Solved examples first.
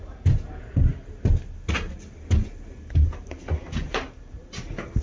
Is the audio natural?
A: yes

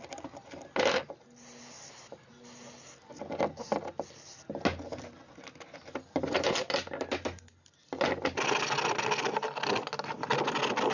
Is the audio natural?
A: yes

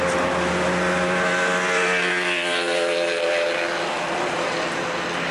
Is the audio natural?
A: yes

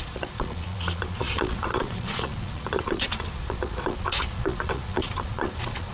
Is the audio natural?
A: no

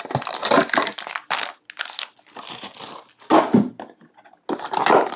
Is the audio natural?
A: yes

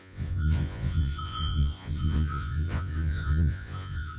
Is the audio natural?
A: no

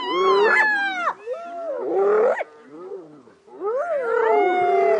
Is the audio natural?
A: yes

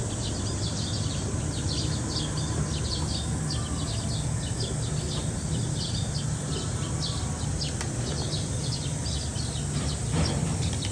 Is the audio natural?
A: yes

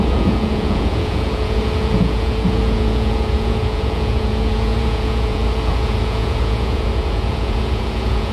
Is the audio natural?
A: no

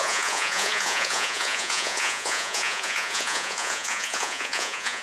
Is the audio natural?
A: no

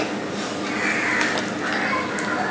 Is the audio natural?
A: yes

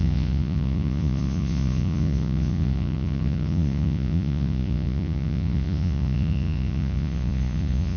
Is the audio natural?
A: no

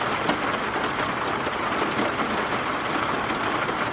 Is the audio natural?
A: yes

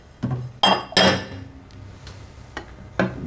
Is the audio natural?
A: yes